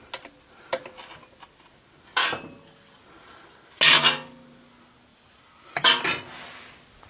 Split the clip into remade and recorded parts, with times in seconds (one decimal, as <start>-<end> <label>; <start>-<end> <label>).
0.0-2.2 recorded; 2.2-3.0 remade; 3.0-5.1 recorded; 5.1-6.0 remade; 6.0-7.1 recorded